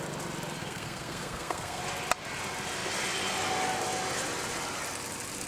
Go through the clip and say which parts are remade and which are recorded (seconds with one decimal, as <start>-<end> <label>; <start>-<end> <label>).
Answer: 0.0-0.6 recorded; 0.6-1.8 remade; 1.8-5.5 recorded